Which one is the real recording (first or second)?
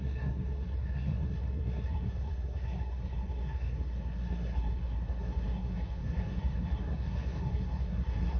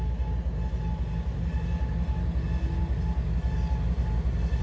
second